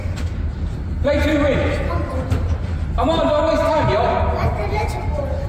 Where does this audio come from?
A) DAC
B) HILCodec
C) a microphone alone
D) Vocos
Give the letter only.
C